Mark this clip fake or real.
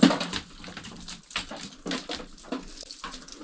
real